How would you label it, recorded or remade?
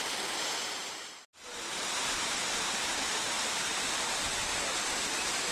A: recorded